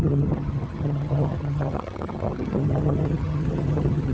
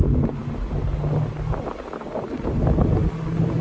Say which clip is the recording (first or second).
second